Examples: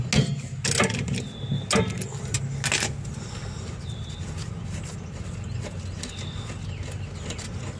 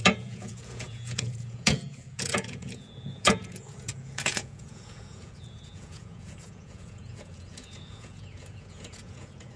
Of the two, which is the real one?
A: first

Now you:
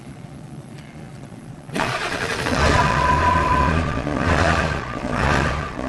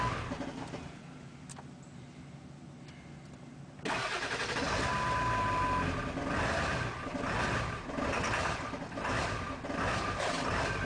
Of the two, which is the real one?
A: second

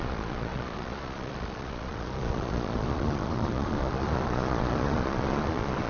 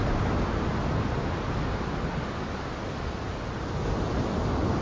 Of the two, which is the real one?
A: second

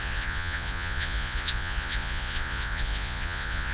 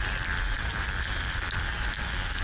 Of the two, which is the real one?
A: second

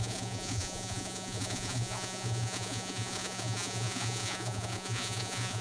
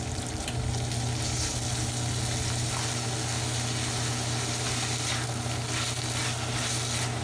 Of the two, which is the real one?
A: second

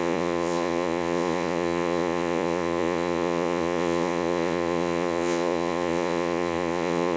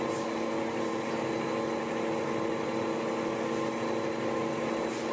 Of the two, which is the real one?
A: second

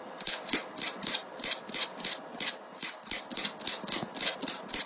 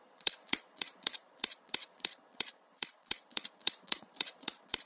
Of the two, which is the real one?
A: first